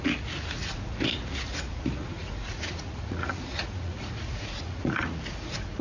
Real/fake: fake